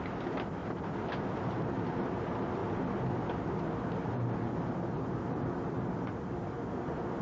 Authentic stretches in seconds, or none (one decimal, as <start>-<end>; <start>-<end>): 0.0-0.6; 1.5-7.2